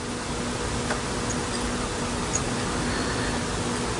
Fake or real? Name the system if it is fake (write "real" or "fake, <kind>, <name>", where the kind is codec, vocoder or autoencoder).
real